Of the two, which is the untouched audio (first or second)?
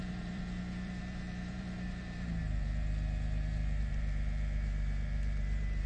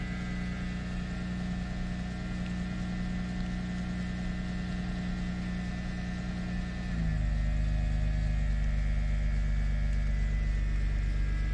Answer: second